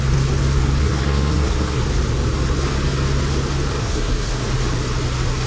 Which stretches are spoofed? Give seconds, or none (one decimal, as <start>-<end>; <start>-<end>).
0.8-1.8; 3.8-4.4